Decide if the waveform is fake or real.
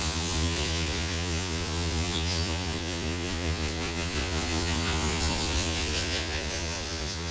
fake